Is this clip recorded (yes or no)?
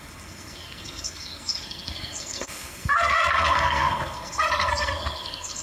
no